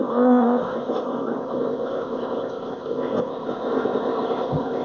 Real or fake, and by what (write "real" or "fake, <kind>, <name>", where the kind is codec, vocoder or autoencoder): fake, codec, ZipCodec